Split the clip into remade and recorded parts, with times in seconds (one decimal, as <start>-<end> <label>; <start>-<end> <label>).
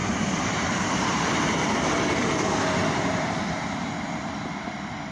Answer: 0.0-1.8 remade; 1.8-2.8 recorded; 2.8-3.9 remade; 3.9-5.1 recorded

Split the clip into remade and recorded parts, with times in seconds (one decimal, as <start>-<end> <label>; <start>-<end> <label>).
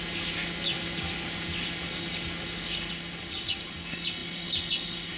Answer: 0.0-4.2 recorded; 4.2-4.7 remade; 4.7-5.2 recorded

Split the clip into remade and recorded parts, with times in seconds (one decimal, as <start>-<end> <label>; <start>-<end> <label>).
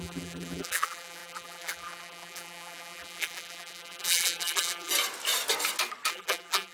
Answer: 0.0-4.9 remade; 4.9-6.1 recorded; 6.1-6.7 remade